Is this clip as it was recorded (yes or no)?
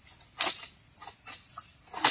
yes